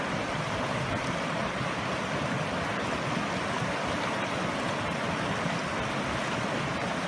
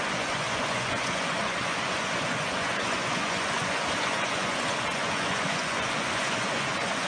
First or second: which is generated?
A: second